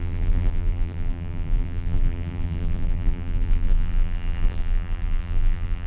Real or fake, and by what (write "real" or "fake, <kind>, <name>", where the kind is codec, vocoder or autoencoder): fake, vocoder, BigVGAN v2